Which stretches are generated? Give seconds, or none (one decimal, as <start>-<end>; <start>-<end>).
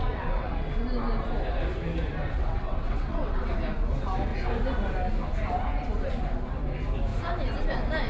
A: 0.0-0.7; 2.2-3.5